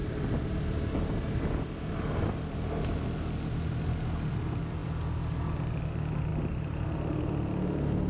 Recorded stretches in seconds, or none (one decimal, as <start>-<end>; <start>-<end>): 0.0-8.1